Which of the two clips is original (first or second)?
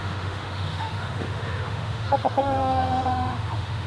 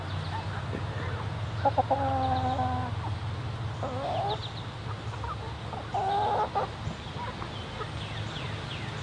second